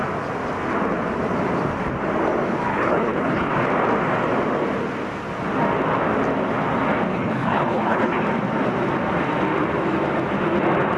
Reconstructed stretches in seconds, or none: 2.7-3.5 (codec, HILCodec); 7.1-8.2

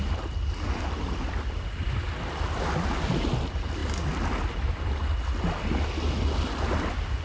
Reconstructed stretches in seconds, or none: none

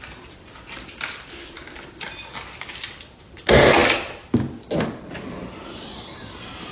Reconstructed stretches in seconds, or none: none

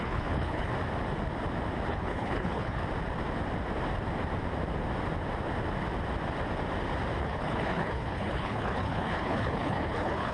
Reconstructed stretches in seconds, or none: 0.0-0.7 (codec, HILCodec); 1.9-2.8; 7.2-10.3

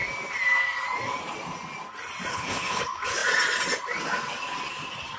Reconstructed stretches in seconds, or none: 2.3-2.8 (codec, HILCodec)

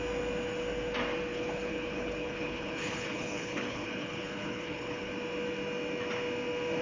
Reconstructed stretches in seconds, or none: 1.3-5.1 (codec, HILCodec)

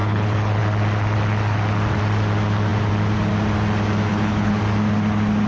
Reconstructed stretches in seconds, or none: 0.0-0.6 (codec, HILCodec); 4.1-4.6